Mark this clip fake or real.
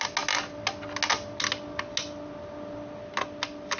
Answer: real